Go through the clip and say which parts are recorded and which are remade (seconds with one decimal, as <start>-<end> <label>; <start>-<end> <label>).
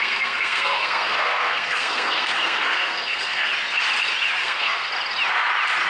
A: 0.0-3.5 remade; 3.5-4.4 recorded; 4.4-4.9 remade; 4.9-5.9 recorded